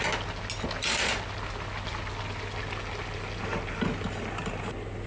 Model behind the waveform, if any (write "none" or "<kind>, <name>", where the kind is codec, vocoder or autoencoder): none